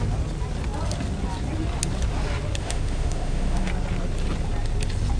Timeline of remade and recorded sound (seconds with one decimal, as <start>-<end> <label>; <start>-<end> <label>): 0.0-2.6 recorded; 2.6-3.7 remade; 3.7-5.2 recorded